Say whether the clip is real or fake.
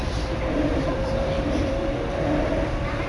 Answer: fake